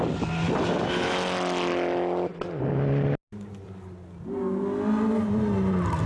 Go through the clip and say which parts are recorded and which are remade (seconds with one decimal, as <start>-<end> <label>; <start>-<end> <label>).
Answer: 0.0-6.1 recorded